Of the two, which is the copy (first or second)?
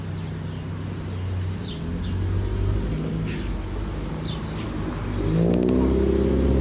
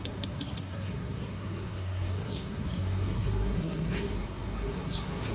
second